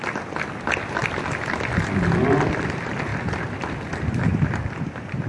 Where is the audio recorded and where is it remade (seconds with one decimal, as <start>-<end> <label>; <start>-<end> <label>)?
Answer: 0.0-5.3 recorded